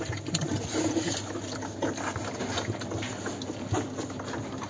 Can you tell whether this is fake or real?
real